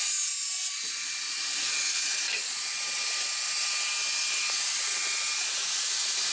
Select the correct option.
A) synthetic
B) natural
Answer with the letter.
B